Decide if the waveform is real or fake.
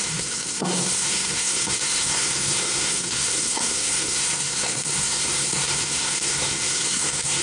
fake